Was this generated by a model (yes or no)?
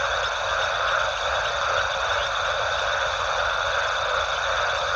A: yes